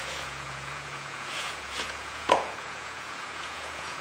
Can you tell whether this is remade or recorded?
remade